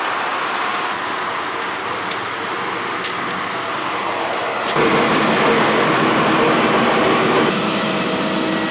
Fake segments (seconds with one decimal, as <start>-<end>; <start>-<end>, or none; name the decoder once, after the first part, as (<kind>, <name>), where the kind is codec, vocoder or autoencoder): none